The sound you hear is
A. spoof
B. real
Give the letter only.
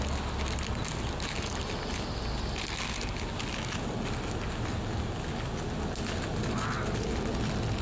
B